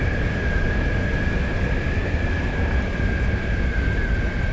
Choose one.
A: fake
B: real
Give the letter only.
B